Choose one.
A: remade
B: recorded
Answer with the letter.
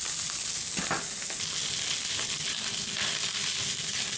B